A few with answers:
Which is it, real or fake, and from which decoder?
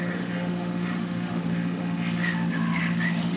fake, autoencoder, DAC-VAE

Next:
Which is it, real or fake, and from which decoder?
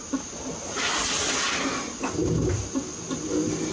real